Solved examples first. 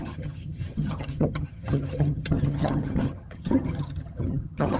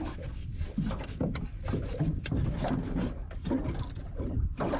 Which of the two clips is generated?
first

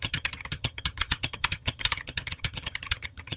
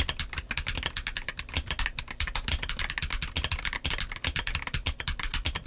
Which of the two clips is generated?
first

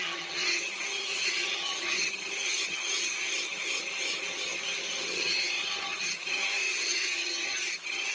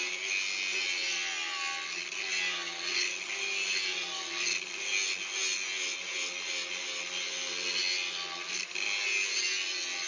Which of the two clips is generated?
first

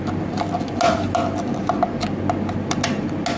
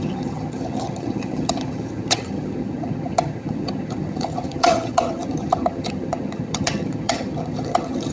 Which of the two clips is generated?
second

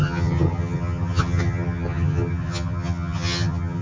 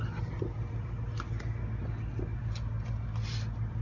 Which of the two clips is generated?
first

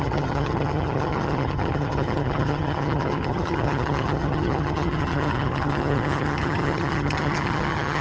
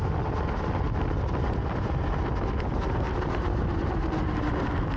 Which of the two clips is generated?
first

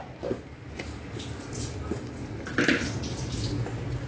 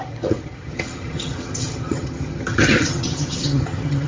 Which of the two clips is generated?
second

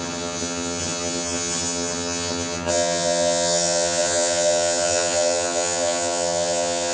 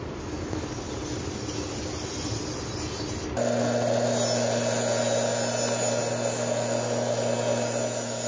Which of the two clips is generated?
first